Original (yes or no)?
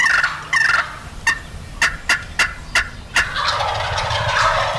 yes